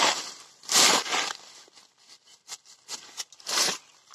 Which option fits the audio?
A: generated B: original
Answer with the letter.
B